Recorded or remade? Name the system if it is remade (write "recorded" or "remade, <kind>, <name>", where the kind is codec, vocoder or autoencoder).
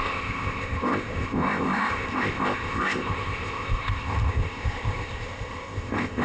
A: remade, codec, ZipCodec